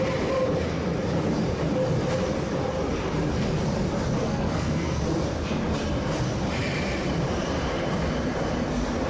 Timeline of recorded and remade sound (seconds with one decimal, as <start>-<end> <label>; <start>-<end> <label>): 0.0-4.2 recorded; 4.2-5.0 remade; 5.0-9.1 recorded